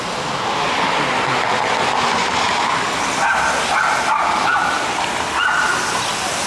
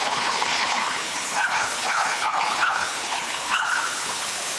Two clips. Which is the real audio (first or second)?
first